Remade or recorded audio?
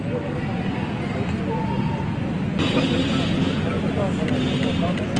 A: recorded